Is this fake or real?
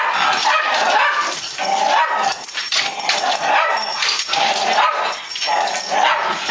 real